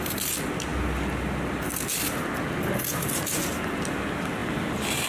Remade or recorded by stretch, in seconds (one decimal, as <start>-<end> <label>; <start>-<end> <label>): 0.0-4.4 recorded; 4.4-5.1 remade